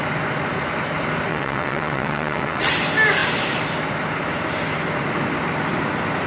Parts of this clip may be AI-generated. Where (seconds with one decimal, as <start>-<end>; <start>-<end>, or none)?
1.3-2.7

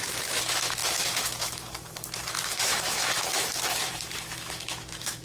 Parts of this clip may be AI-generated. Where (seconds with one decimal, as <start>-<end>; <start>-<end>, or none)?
0.0-5.2

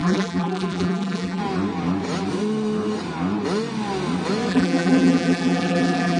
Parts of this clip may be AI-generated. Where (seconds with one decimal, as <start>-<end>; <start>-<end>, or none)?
0.0-1.4; 4.5-6.2

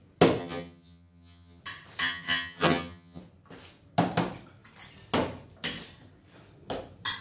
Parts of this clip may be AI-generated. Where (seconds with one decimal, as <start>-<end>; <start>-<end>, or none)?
0.4-1.6; 2.0-3.2

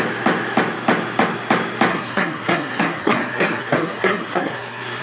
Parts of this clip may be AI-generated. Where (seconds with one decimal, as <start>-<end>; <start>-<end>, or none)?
1.9-5.0

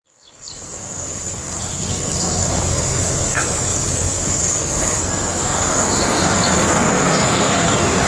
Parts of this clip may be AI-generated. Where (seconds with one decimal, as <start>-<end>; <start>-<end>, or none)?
0.0-8.1

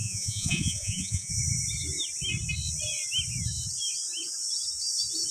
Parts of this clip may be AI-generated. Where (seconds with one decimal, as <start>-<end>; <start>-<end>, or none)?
0.0-1.3

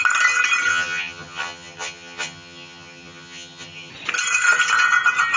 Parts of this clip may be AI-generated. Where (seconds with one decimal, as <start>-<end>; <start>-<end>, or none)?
0.7-3.9